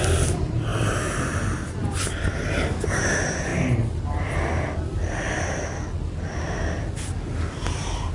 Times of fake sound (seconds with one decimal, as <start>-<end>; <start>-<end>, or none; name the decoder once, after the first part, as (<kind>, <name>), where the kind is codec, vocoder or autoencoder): none